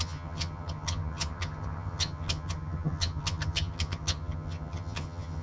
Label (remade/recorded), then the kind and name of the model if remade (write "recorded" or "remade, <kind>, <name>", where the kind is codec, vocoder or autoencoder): remade, vocoder, HiFi-GAN